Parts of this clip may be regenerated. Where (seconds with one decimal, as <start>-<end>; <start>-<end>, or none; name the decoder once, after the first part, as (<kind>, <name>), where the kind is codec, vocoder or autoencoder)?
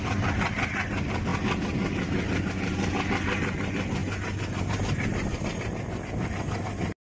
none